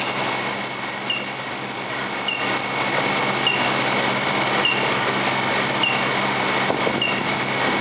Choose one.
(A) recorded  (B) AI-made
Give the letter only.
A